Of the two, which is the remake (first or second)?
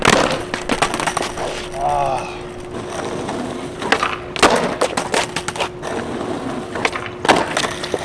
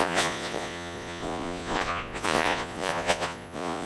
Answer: second